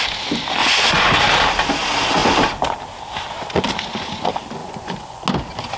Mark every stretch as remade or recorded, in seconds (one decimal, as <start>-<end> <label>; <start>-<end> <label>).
0.0-0.6 recorded; 0.6-1.2 remade; 1.2-4.6 recorded; 4.6-5.2 remade; 5.2-5.8 recorded

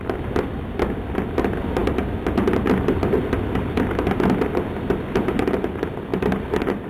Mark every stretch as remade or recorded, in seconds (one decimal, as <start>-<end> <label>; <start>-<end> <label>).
0.0-6.9 recorded

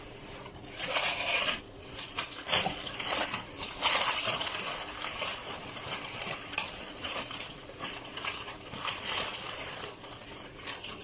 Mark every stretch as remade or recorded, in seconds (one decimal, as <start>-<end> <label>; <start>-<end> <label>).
0.0-4.5 remade; 4.5-5.2 recorded; 5.2-11.0 remade